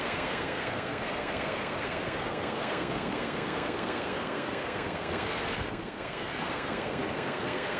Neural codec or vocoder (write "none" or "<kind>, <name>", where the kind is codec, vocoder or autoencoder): codec, SNAC